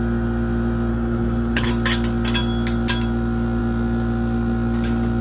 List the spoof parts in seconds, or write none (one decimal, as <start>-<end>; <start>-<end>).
0.9-1.7